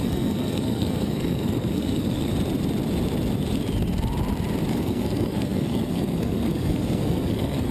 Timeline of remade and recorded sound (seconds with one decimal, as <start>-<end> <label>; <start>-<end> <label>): 0.0-2.3 remade; 2.3-4.7 recorded; 4.7-7.7 remade